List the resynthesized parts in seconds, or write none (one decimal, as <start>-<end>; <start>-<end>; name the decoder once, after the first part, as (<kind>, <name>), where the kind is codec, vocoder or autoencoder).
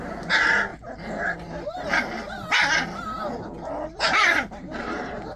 0.0-0.7 (vocoder, BigVGAN v2); 3.9-5.4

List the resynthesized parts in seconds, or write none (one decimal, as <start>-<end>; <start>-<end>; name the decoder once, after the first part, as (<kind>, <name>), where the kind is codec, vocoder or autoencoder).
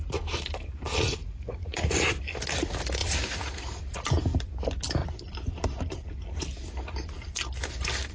1.2-2.1 (vocoder, Vocos); 3.0-3.8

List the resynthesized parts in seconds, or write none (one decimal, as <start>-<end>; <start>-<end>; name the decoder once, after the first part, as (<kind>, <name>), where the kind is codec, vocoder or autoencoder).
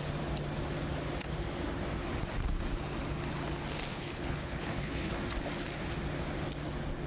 3.9-5.2 (codec, HILCodec)